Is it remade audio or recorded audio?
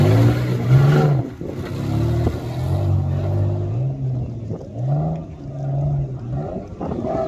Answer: recorded